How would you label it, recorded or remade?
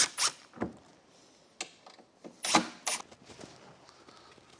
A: recorded